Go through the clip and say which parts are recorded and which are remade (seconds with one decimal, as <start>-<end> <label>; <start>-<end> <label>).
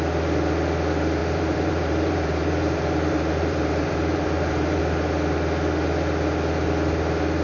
0.0-1.2 recorded; 1.2-4.8 remade; 4.8-7.4 recorded